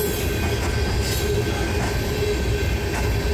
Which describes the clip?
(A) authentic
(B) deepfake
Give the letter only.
A